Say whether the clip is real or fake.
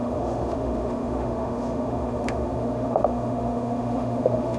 fake